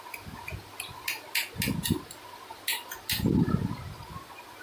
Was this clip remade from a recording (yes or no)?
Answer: no